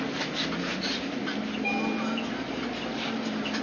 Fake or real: real